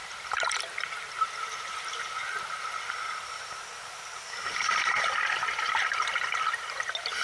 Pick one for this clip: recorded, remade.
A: recorded